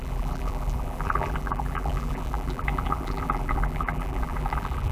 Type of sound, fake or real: fake